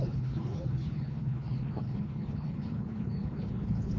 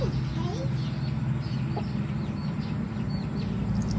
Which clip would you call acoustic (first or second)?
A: second